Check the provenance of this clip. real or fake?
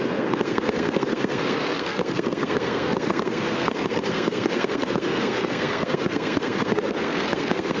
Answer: fake